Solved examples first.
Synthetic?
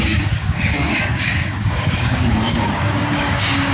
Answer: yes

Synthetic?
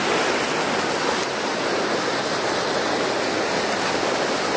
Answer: no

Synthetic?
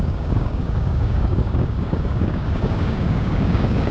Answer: yes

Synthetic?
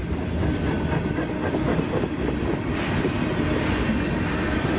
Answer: no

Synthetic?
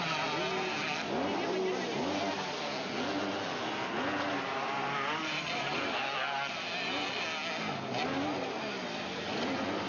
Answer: no